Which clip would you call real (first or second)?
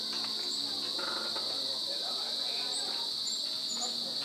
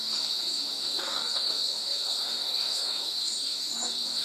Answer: first